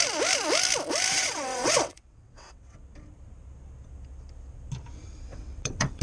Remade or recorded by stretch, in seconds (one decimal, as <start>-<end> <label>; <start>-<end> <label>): 0.0-1.1 recorded; 1.1-2.8 remade; 2.8-5.3 recorded; 5.3-6.0 remade